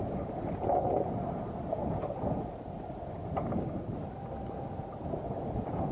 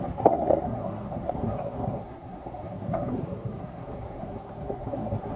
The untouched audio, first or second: first